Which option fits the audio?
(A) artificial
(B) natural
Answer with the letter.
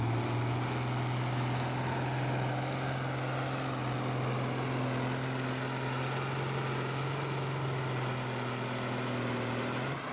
B